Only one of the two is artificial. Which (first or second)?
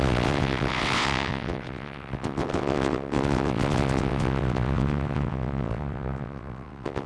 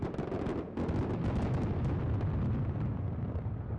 first